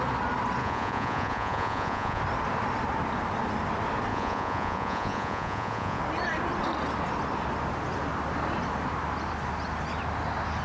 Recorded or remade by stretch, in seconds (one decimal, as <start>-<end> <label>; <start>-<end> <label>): 0.0-0.6 recorded; 0.6-2.2 remade; 2.2-4.1 recorded; 4.1-6.0 remade; 6.0-10.6 recorded